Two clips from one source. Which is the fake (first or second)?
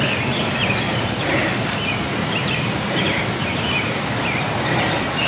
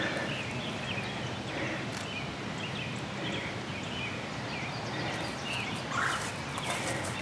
first